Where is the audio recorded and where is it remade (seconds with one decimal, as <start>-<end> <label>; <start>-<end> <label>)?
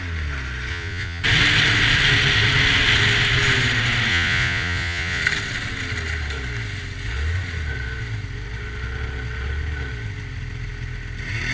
0.0-0.7 recorded; 0.7-1.2 remade; 1.2-4.1 recorded; 4.1-5.2 remade; 5.2-11.5 recorded